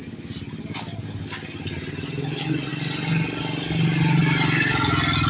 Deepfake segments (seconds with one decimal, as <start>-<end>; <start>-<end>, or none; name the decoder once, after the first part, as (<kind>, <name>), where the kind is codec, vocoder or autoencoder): none